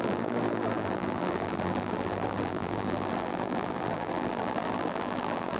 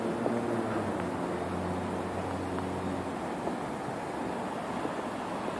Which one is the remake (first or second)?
first